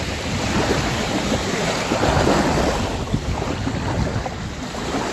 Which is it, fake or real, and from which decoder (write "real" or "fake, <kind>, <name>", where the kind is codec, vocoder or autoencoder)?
real